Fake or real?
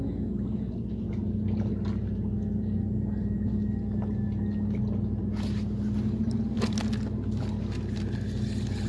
real